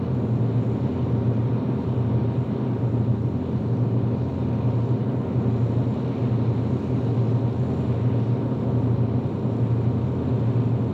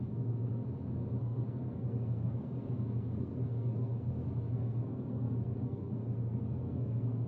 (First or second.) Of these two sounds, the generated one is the second